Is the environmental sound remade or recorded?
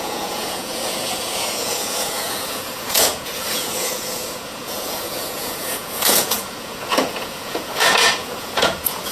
remade